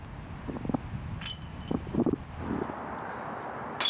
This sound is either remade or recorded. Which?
recorded